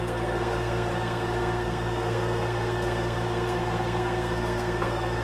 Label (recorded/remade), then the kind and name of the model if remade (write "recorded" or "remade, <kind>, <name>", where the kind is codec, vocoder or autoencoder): remade, codec, SNAC